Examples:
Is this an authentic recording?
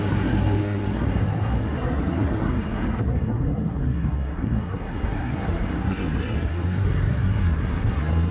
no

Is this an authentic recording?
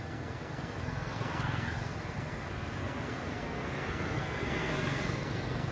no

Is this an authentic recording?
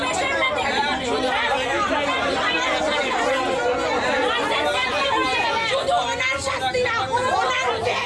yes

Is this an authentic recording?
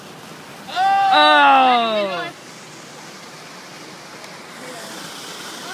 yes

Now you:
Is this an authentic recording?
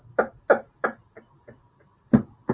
yes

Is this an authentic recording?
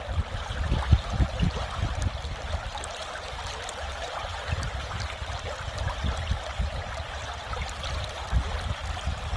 yes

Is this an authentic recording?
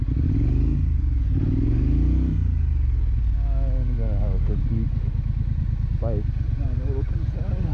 yes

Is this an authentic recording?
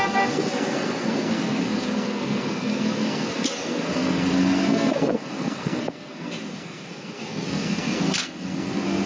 no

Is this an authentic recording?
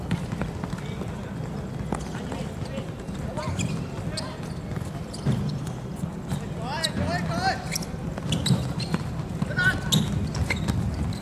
yes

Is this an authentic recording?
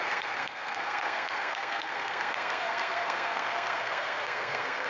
no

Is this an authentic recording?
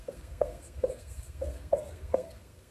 no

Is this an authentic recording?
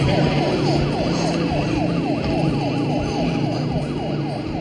yes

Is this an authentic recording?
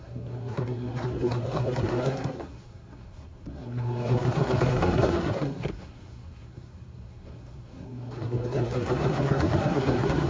no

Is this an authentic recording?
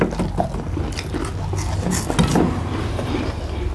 yes